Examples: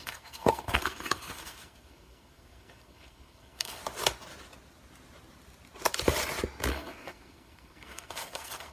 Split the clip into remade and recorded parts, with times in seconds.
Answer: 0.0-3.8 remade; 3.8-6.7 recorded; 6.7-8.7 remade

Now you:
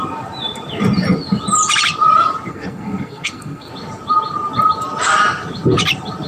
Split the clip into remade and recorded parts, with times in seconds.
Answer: 0.0-2.5 recorded; 2.5-3.7 remade; 3.7-6.3 recorded

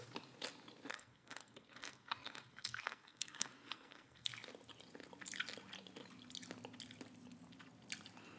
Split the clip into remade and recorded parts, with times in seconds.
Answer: 0.0-0.9 recorded; 0.9-4.3 remade; 4.3-8.4 recorded

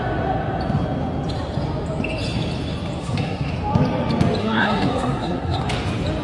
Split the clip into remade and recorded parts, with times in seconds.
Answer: 0.0-3.0 recorded; 3.0-3.5 remade; 3.5-4.4 recorded; 4.4-5.6 remade; 5.6-6.2 recorded

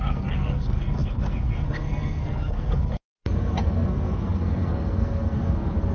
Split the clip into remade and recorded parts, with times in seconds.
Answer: 0.0-5.9 remade

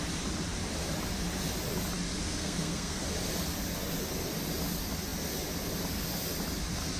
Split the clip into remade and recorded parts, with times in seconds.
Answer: 0.0-2.3 recorded; 2.3-3.0 remade; 3.0-7.0 recorded